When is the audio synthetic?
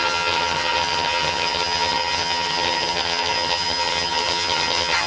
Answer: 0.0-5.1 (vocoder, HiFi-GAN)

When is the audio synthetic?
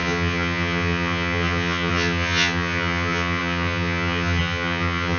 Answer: 0.0-5.2 (vocoder, HiFi-GAN)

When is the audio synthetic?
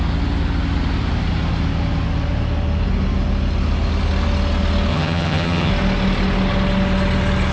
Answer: 4.9-5.7 (vocoder, HiFi-GAN)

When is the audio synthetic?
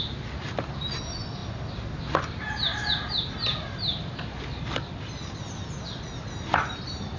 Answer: none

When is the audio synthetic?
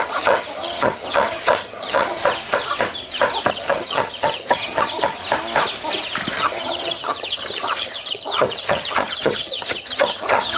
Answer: 0.0-2.2 (vocoder, HiFi-GAN); 3.5-5.2; 6.3-10.6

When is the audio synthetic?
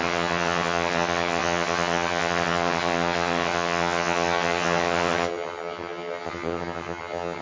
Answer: 0.0-7.4 (vocoder, HiFi-GAN)